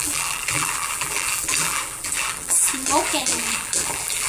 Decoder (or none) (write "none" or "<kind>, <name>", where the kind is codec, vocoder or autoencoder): vocoder, BigVGAN v2